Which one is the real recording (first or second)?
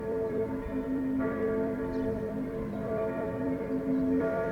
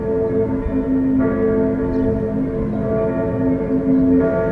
second